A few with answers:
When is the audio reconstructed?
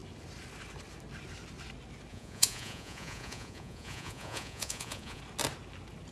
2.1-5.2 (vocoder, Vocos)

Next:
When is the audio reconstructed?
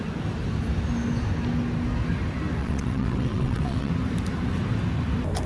2.6-3.9 (vocoder, WaveNeXt)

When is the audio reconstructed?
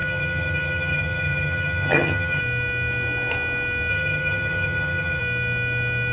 0.0-2.4 (vocoder, HiFi-GAN); 3.9-5.2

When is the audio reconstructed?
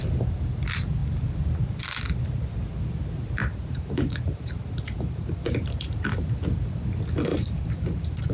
3.4-5.7 (vocoder, BigVGAN v2); 7.3-8.3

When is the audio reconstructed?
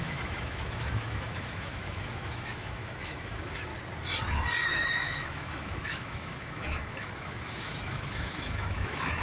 0.0-3.7 (autoencoder, DAC-VAE); 4.7-9.2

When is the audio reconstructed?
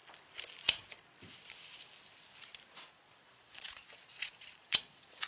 2.9-5.3 (vocoder, Vocos)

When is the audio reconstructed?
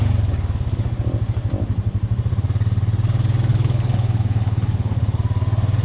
3.5-5.2 (codec, HILCodec)